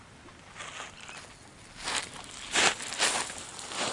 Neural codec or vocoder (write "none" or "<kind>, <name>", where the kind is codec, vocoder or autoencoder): none